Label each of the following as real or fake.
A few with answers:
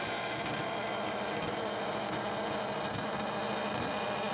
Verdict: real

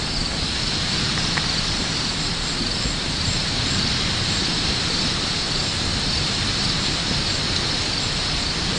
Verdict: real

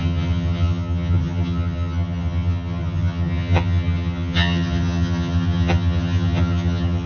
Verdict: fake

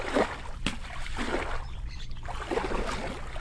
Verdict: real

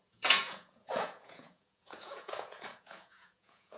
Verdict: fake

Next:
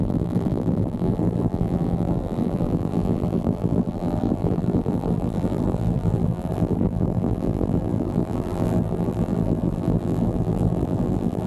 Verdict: fake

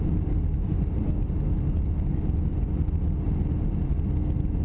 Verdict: real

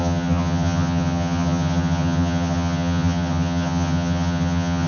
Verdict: fake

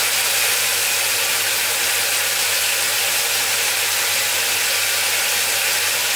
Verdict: real